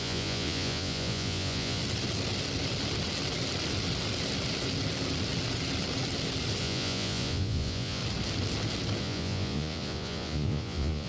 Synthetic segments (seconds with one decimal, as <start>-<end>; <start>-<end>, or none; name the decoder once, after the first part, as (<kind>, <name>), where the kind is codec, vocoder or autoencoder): 0.0-1.8 (vocoder, Vocos); 6.6-8.0; 9.0-11.1